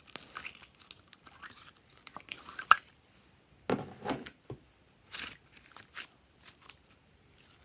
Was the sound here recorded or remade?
recorded